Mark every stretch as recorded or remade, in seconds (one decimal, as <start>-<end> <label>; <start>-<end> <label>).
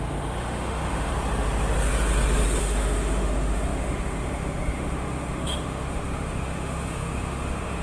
0.0-1.1 remade; 1.1-2.6 recorded; 2.6-7.8 remade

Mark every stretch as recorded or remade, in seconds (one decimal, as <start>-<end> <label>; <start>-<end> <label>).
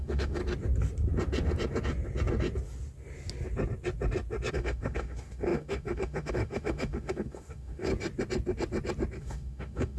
0.0-0.4 remade; 0.4-4.5 recorded; 4.5-7.9 remade; 7.9-9.2 recorded; 9.2-10.0 remade